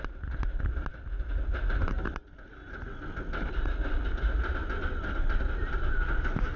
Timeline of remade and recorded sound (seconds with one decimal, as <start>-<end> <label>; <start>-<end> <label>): 0.0-6.6 recorded